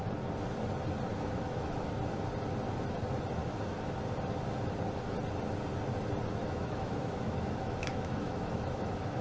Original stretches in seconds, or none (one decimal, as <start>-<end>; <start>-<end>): 0.0-1.1; 1.9-3.4; 4.0-6.4

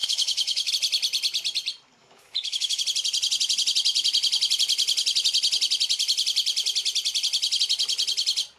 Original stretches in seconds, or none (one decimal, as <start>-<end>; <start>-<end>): 0.7-2.0; 2.8-8.6

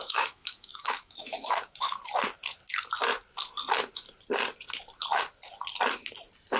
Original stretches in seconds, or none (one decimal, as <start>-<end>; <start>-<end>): 2.0-6.6